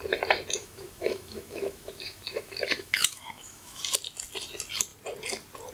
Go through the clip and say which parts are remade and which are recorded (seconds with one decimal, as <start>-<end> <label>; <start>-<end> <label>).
0.0-0.6 recorded; 0.6-3.8 remade; 3.8-5.7 recorded